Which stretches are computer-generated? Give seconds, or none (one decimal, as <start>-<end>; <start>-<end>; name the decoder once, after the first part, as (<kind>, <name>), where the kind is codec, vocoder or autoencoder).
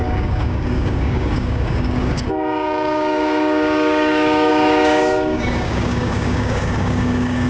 0.0-7.5 (codec, DAC)